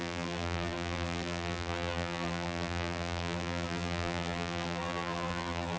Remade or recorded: remade